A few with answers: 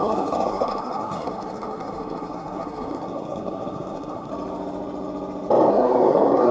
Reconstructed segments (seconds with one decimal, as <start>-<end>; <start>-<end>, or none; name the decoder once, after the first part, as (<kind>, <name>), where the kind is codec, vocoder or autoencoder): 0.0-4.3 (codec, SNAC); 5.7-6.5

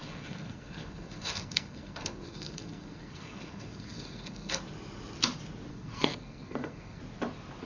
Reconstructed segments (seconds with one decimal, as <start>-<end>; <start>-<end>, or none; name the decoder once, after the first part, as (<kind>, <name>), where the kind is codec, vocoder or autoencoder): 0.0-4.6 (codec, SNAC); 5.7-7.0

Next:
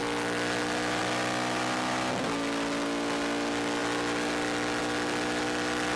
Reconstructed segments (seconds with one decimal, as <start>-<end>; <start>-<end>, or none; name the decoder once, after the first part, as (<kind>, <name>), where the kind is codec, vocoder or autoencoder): none

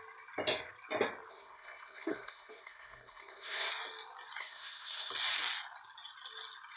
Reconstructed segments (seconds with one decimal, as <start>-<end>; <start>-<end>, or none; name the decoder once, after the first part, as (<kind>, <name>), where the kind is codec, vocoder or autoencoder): 1.3-3.7 (codec, SNAC); 4.4-5.1

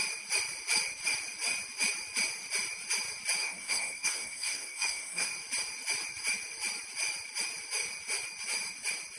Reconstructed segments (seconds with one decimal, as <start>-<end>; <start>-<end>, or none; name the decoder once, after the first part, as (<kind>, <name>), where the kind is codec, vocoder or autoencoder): 3.4-5.3 (codec, SNAC)